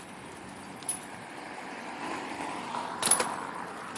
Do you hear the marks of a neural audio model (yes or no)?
no